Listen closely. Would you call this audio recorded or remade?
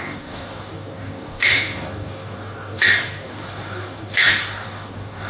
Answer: remade